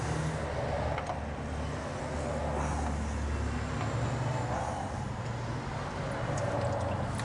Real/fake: real